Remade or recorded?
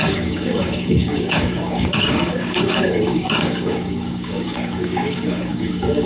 remade